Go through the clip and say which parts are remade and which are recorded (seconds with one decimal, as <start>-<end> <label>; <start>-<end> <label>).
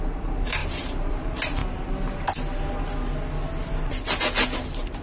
0.0-0.6 remade; 0.6-1.1 recorded; 1.1-1.6 remade; 1.6-4.6 recorded; 4.6-5.0 remade